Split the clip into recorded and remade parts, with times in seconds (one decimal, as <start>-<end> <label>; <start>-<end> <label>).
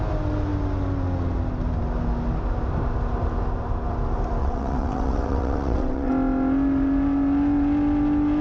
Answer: 0.0-4.4 recorded; 4.4-6.1 remade; 6.1-8.4 recorded